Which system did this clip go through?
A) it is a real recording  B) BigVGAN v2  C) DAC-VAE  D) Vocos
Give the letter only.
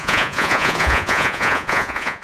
D